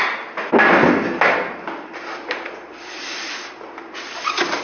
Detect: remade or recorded recorded